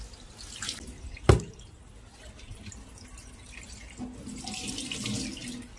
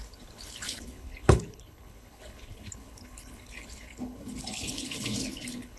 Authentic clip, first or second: first